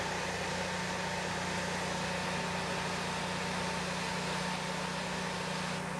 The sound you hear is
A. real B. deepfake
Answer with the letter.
A